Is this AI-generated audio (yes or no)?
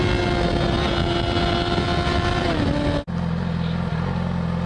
no